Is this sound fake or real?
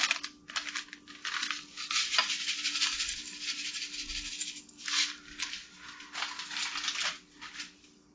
real